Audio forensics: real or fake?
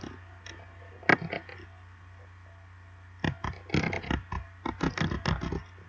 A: real